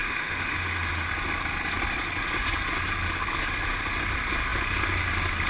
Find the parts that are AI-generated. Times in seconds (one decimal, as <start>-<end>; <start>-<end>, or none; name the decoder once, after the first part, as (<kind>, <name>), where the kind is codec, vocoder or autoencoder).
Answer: 0.0-1.1 (autoencoder, DAC-VAE)